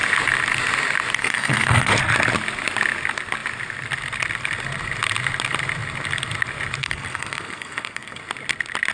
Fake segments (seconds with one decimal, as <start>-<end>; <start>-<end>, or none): 1.2-1.9; 6.8-8.2